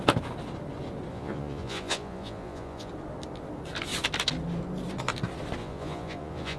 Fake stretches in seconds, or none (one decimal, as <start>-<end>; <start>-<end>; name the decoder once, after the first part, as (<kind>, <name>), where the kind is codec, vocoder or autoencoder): 1.1-2.9 (vocoder, Vocos); 5.6-6.6